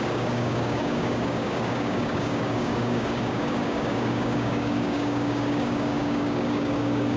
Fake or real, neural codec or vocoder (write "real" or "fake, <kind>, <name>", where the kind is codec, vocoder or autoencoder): fake, codec, DAC